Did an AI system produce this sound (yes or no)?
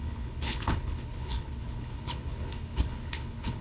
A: yes